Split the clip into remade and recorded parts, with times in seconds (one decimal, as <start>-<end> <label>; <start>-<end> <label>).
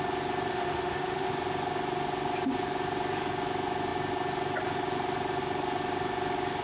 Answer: 0.0-0.5 recorded; 0.5-1.3 remade; 1.3-6.6 recorded